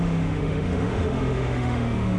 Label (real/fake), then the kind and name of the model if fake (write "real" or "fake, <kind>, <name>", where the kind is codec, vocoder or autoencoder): fake, autoencoder, DAC-VAE